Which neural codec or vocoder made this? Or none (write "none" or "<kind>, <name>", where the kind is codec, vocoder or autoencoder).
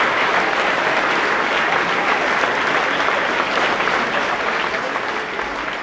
none